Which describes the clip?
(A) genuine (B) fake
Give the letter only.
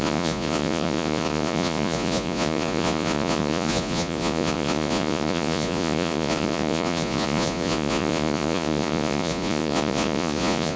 B